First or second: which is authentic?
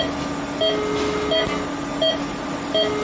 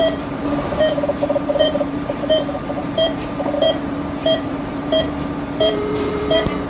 first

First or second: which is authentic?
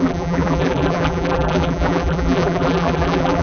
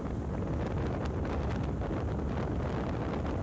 second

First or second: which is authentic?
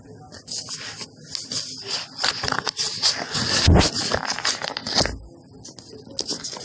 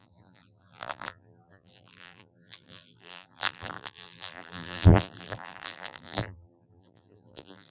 first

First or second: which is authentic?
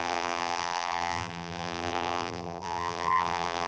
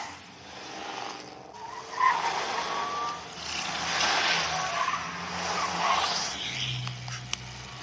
second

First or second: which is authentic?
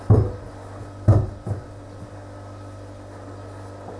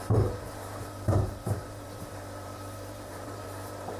first